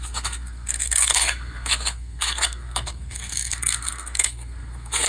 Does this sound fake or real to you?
fake